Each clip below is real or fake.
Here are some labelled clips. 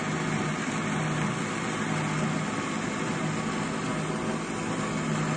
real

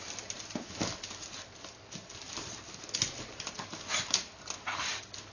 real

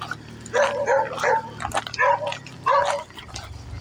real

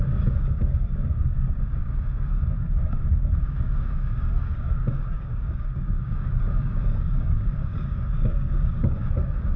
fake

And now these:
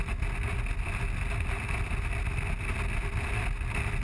real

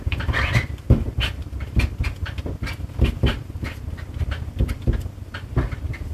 fake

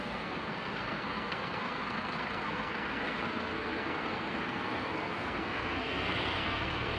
fake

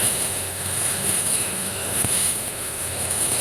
fake